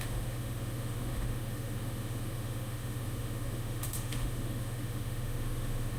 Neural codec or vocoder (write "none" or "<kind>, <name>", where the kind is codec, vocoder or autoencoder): autoencoder, DAC-VAE